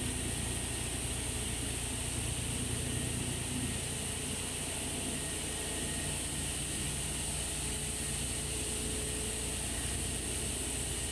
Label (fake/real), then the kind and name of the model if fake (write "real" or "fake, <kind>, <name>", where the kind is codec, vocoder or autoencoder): real